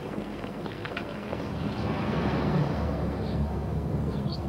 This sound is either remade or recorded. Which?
remade